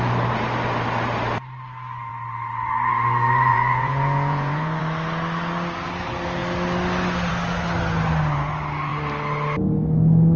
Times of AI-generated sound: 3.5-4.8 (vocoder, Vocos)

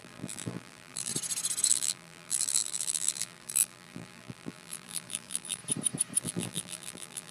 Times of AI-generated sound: 0.0-1.1 (vocoder, BigVGAN v2); 1.7-5.6; 6.2-7.3